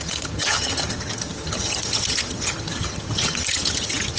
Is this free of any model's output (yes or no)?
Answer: no